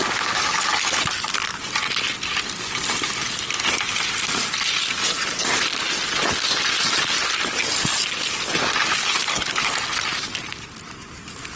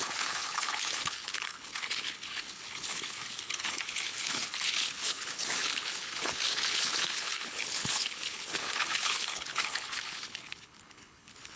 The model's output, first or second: second